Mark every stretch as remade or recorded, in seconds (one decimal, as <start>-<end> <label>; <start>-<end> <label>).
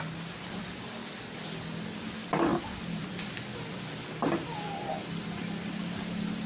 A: 0.0-6.5 recorded